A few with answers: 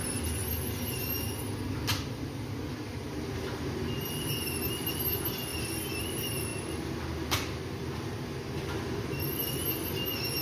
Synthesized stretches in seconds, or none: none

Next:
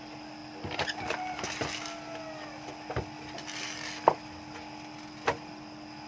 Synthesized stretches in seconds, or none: none

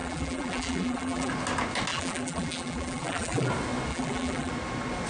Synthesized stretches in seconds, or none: 0.0-1.3; 1.9-3.5; 3.9-4.5

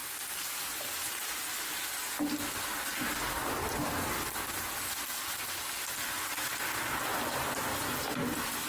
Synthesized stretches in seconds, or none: 7.1-8.7

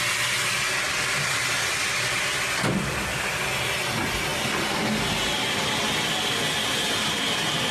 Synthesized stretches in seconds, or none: none